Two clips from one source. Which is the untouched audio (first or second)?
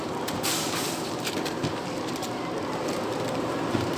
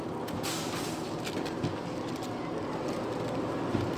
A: second